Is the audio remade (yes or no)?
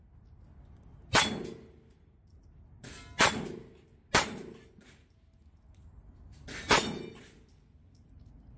no